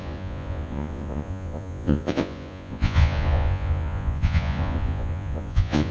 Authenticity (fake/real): fake